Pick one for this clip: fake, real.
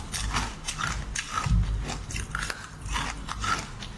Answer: real